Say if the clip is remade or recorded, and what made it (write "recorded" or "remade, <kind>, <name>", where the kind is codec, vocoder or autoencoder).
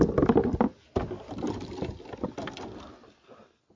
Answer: recorded